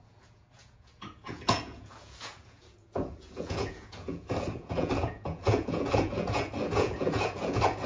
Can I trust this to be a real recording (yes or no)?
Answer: no